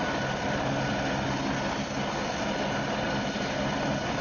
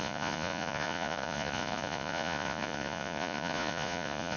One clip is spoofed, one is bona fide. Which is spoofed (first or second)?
second